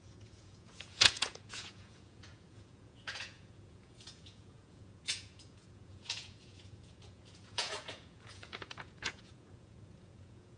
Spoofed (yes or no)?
yes